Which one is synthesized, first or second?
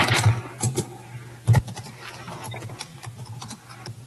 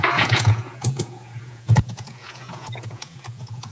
second